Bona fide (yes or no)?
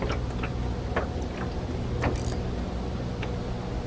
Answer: yes